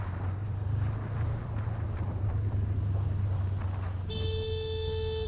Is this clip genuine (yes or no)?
yes